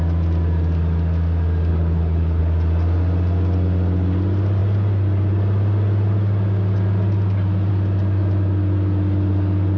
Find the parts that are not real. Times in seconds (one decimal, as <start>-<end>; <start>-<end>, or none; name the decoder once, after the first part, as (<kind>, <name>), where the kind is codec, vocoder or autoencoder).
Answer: 1.7-2.4 (codec, HILCodec)